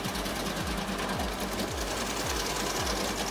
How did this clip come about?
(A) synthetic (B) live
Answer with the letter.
B